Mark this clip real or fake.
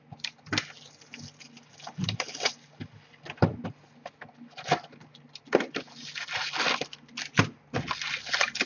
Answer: real